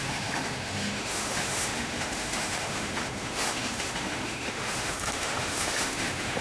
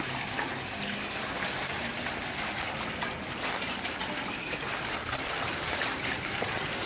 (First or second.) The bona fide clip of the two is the second